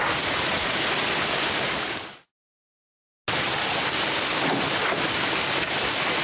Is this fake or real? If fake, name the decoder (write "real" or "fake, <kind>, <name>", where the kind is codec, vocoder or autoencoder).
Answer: real